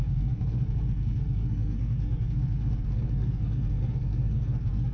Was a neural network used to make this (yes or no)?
yes